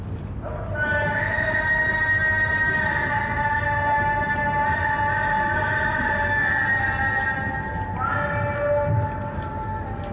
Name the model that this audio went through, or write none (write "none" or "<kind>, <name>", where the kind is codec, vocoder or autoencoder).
none